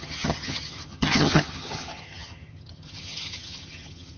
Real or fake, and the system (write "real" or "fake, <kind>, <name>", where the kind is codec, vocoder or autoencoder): fake, vocoder, HiFi-GAN